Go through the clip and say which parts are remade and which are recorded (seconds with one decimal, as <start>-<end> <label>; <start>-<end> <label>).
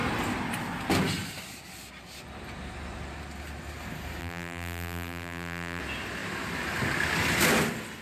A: 0.0-4.2 recorded; 4.2-5.8 remade; 5.8-8.0 recorded